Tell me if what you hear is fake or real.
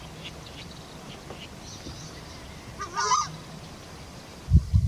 real